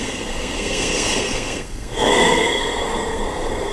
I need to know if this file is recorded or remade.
remade